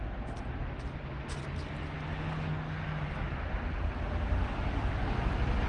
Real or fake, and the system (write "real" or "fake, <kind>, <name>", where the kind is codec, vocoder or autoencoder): real